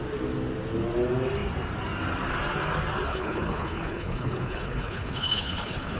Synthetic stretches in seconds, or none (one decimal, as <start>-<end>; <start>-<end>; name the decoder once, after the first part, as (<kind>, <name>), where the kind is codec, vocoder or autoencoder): 3.1-6.0 (codec, HILCodec)